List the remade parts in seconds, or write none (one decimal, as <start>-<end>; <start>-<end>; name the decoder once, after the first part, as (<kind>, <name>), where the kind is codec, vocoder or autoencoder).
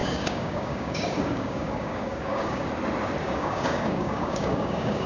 0.0-2.6 (codec, DAC); 3.2-5.1